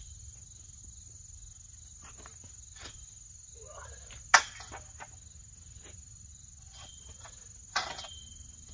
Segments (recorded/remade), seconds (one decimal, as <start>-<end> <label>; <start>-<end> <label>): 0.0-6.3 recorded; 6.3-7.0 remade; 7.0-8.7 recorded